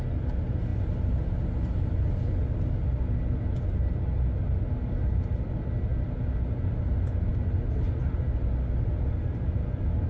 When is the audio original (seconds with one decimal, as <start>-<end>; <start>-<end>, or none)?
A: 0.0-10.1

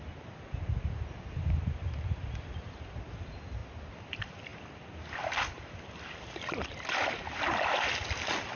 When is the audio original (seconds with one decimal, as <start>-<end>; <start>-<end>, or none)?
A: 0.0-8.6

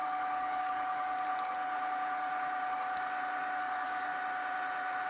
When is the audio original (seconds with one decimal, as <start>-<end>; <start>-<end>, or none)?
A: 1.3-3.6; 4.1-5.1

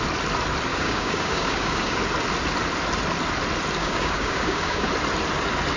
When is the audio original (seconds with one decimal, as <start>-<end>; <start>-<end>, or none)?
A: 0.0-0.7; 2.0-3.8; 4.9-5.8